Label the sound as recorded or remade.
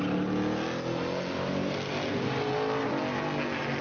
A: recorded